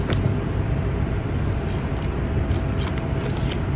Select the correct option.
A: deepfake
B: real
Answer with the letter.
B